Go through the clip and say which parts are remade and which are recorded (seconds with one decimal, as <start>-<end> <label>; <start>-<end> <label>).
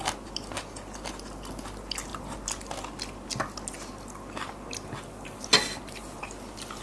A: 0.0-6.8 recorded